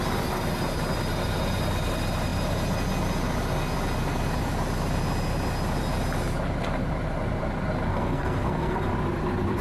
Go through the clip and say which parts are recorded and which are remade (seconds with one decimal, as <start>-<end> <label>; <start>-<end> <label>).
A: 0.0-7.9 recorded; 7.9-8.9 remade; 8.9-9.6 recorded